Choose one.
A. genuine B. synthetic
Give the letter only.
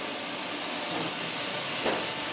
A